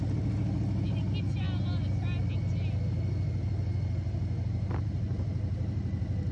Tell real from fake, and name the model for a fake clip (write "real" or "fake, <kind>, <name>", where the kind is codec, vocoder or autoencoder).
real